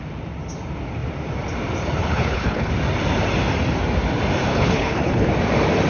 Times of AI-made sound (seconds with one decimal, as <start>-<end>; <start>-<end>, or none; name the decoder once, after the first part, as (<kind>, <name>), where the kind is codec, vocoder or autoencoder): 2.0-2.7 (codec, HILCodec); 4.5-5.3